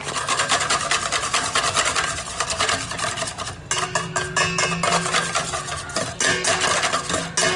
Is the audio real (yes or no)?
yes